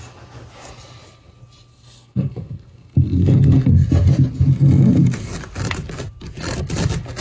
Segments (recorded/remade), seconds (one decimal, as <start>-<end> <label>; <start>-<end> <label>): 0.0-1.7 recorded; 1.7-3.7 remade; 3.7-7.2 recorded

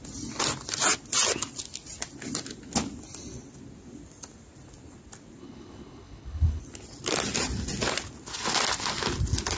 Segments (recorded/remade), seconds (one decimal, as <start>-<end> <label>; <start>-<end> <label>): 0.0-5.4 recorded; 5.4-6.6 remade; 6.6-9.6 recorded

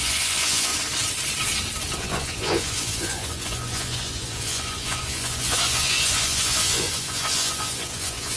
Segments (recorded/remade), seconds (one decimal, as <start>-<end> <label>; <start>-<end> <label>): 0.0-0.7 remade; 0.7-2.0 recorded; 2.0-8.4 remade

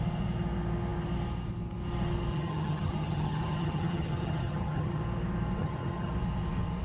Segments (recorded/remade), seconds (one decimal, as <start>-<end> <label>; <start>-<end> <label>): 0.0-2.3 recorded; 2.3-5.0 remade; 5.0-5.6 recorded; 5.6-6.1 remade; 6.1-6.8 recorded

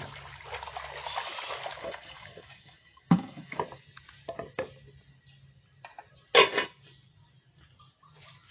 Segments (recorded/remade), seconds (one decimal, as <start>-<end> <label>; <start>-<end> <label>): 0.0-1.8 recorded; 1.8-3.6 remade; 3.6-8.5 recorded

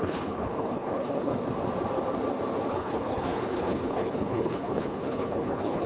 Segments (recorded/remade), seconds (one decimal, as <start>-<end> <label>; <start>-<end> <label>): 0.0-1.3 remade; 1.3-2.7 recorded; 2.7-5.9 remade